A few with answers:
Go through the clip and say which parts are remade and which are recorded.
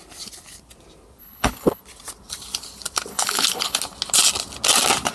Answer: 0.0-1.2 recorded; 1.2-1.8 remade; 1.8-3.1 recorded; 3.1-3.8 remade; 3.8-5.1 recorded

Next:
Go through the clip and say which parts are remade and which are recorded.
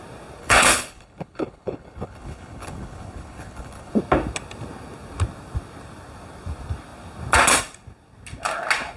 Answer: 0.0-0.4 recorded; 0.4-3.9 remade; 3.9-9.0 recorded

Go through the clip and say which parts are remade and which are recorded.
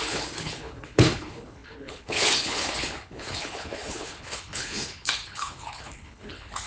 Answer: 0.0-6.7 remade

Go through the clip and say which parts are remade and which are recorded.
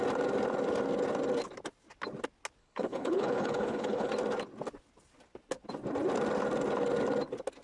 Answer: 0.0-2.6 recorded; 2.6-4.1 remade; 4.1-7.6 recorded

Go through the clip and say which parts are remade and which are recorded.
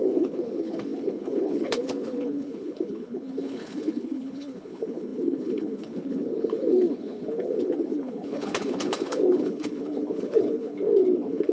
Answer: 0.0-11.5 remade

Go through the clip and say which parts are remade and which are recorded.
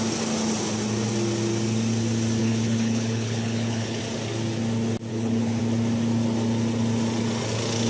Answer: 0.0-2.4 recorded; 2.4-4.0 remade; 4.0-5.1 recorded; 5.1-5.6 remade; 5.6-7.9 recorded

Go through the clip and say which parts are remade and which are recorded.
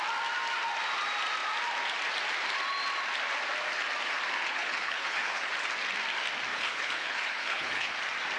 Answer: 0.0-4.5 recorded; 4.5-5.5 remade; 5.5-6.5 recorded; 6.5-7.9 remade; 7.9-8.4 recorded